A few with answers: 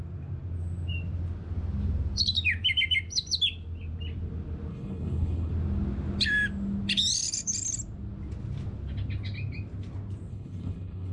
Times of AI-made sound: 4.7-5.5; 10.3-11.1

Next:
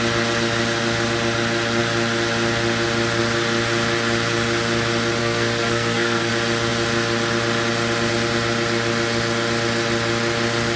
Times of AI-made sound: 5.2-6.3

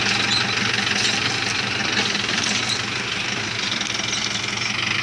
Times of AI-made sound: 1.8-2.6

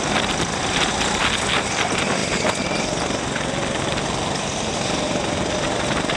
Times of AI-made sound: none

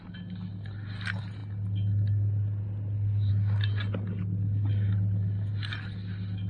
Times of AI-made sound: none

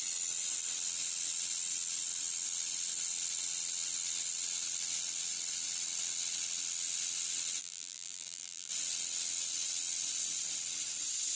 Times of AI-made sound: 7.6-8.7

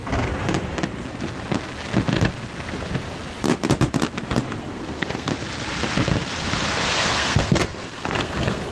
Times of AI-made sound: 4.6-5.3; 6.9-8.7